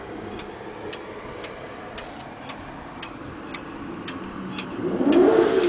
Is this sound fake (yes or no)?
no